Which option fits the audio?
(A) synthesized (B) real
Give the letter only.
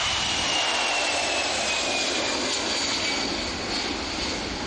B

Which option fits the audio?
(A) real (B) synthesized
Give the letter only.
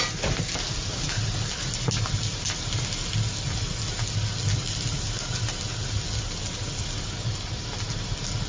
A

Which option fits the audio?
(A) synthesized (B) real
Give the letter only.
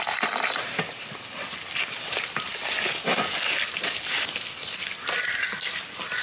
A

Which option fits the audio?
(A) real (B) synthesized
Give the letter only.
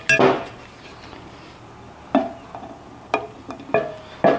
A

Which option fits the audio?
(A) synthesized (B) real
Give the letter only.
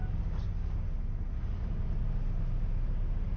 B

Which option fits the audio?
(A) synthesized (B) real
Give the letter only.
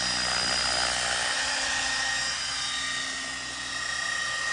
B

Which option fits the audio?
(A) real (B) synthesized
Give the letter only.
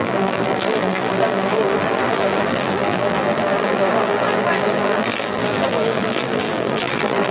B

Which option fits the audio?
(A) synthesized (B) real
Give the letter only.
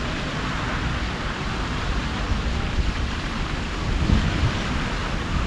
A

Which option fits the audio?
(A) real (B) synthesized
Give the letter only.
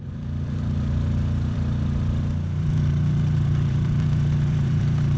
B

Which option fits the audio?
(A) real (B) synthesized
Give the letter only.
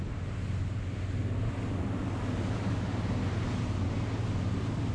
A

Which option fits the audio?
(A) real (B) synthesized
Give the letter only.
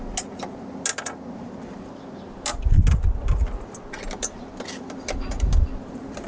A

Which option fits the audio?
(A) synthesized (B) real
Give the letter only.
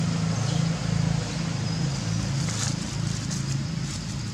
B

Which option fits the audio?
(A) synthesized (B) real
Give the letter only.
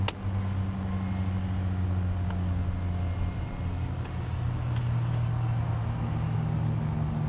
B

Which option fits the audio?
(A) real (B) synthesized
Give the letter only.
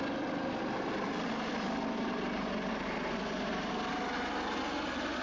A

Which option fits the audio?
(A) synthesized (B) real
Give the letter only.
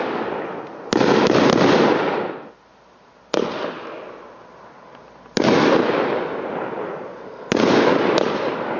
B